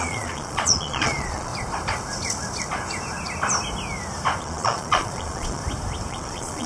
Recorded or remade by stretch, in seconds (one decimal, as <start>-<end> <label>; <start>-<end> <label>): 0.0-1.5 remade; 1.5-4.4 recorded; 4.4-5.6 remade; 5.6-6.1 recorded; 6.1-6.7 remade